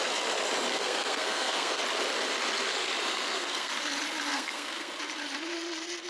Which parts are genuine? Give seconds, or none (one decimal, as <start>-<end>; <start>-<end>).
0.0-0.7; 1.8-3.1; 3.7-4.3; 4.9-6.1